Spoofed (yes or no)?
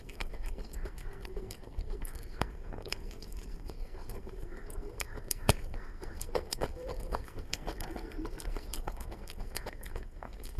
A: yes